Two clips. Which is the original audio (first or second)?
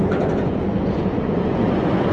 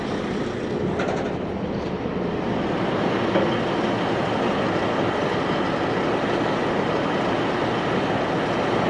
second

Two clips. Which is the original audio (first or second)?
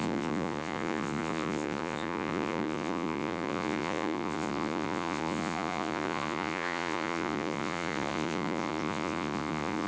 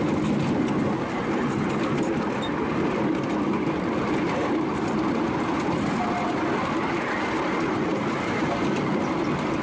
second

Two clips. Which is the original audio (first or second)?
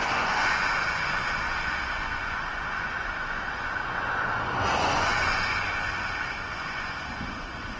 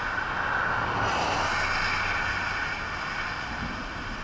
second